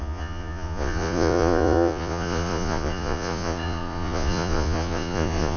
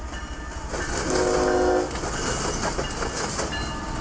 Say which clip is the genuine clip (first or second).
second